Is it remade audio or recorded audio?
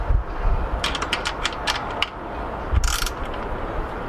recorded